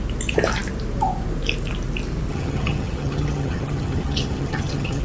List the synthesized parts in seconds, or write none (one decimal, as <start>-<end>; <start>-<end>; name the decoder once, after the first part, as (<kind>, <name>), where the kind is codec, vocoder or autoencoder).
2.3-5.0 (vocoder, HiFi-GAN)